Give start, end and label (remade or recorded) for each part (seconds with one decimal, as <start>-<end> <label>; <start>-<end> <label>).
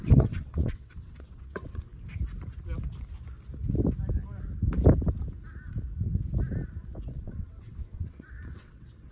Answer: 0.0-1.9 remade; 1.9-7.1 recorded; 7.1-9.1 remade